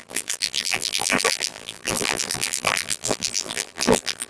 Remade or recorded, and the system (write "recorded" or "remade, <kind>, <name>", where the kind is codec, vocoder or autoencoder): remade, vocoder, BigVGAN v2